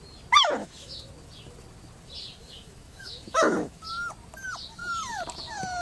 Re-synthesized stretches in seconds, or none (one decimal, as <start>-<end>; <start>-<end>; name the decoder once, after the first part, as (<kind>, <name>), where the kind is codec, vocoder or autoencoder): 0.6-1.1 (autoencoder, DAC-VAE); 2.4-3.8